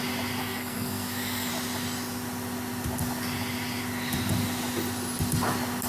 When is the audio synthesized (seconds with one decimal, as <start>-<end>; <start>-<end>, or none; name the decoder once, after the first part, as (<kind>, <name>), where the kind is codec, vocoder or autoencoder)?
0.4-1.5 (codec, SNAC)